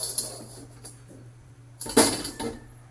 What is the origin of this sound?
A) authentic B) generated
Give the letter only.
A